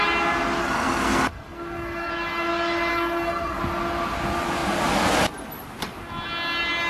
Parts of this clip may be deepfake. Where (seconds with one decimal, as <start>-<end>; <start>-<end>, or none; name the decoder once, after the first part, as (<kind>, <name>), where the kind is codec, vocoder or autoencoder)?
0.6-2.1 (codec, SNAC); 2.9-3.6